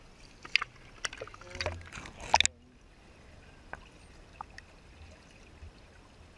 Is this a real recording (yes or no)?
yes